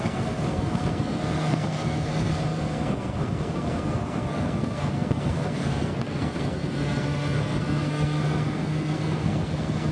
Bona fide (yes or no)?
no